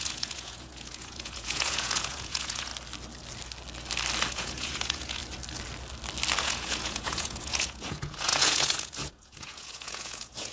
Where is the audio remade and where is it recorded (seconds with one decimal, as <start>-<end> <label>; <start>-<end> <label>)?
0.0-2.7 remade; 2.7-4.3 recorded; 4.3-5.2 remade; 5.2-6.4 recorded; 6.4-10.5 remade